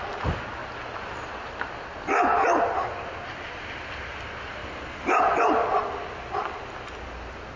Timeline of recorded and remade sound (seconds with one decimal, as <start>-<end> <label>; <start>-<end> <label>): 0.0-7.6 recorded